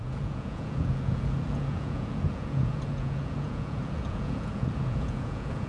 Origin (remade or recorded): remade